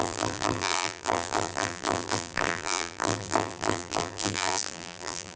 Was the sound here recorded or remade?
remade